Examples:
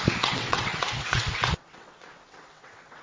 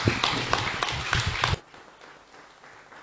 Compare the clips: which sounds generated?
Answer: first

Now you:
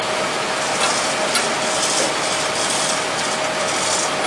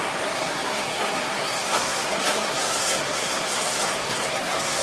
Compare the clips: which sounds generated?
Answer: second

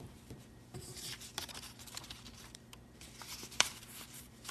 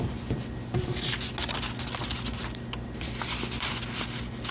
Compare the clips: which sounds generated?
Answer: first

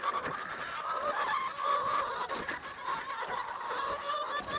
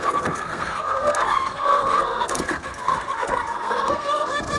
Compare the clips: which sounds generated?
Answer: second